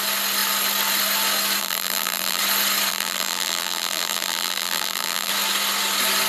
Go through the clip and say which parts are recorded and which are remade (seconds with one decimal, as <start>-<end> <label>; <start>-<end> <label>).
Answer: 0.0-1.6 recorded; 1.6-2.4 remade; 2.4-2.9 recorded; 2.9-5.3 remade; 5.3-6.3 recorded